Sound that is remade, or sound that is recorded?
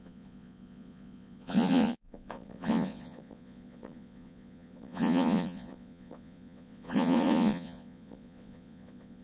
remade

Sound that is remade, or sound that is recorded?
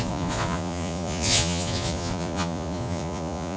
remade